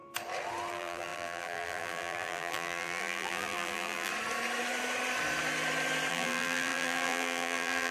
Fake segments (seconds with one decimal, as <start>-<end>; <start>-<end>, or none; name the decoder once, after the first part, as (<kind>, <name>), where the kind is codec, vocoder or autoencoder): 0.7-4.1 (vocoder, BigVGAN v2); 6.1-7.9